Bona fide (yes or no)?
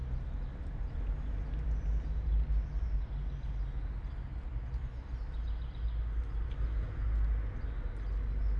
yes